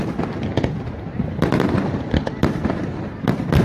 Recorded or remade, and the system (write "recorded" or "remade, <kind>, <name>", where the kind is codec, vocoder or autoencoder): recorded